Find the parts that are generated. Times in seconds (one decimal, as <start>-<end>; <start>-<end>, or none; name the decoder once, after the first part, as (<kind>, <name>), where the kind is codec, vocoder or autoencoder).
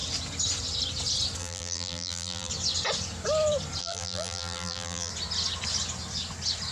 1.4-2.5 (vocoder, BigVGAN v2); 3.8-5.1